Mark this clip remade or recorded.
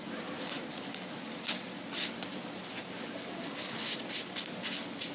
recorded